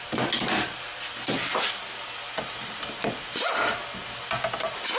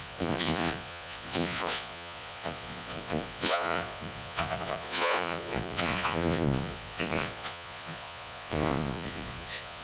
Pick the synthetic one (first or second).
second